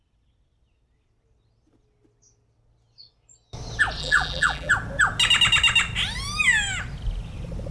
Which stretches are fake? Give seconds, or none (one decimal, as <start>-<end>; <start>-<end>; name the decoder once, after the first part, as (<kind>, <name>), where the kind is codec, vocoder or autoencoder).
4.0-4.7 (vocoder, BigVGAN v2)